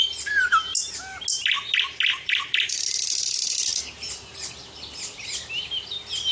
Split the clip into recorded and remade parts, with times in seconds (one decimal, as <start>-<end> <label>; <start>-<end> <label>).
0.0-2.1 recorded; 2.1-2.8 remade; 2.8-6.3 recorded